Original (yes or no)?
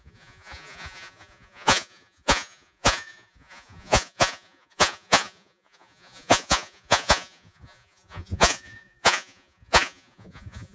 no